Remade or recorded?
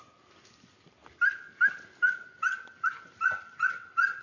recorded